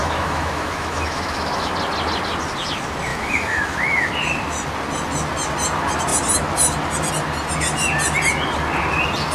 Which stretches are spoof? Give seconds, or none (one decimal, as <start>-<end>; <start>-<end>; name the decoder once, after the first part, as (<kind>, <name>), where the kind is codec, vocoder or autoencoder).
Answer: 0.0-1.7 (autoencoder, DAC-VAE); 3.1-4.1